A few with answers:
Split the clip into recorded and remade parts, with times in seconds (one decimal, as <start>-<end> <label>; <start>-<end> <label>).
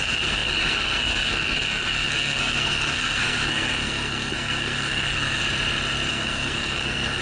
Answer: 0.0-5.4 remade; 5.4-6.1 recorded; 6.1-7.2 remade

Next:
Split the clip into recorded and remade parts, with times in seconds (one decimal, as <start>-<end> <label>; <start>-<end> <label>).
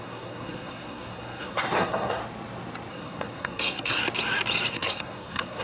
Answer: 0.0-2.2 remade; 2.2-2.9 recorded; 2.9-4.0 remade; 4.0-4.7 recorded; 4.7-5.6 remade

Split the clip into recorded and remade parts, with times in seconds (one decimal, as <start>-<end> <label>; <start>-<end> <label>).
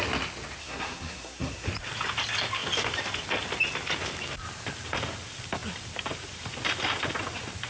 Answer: 0.0-0.6 recorded; 0.6-1.7 remade; 1.7-7.7 recorded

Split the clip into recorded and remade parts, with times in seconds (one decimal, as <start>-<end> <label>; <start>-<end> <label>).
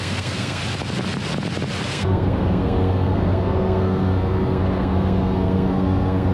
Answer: 0.0-0.6 remade; 0.6-1.9 recorded; 1.9-6.3 remade